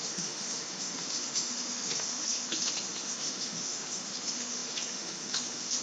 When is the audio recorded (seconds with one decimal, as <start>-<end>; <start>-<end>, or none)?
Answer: none